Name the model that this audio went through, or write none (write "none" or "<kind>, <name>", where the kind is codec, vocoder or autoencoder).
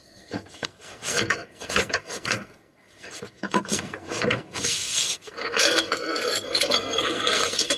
codec, SNAC